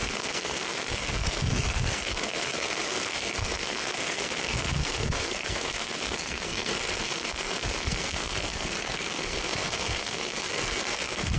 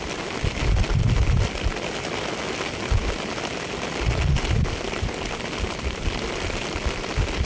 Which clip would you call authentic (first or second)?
second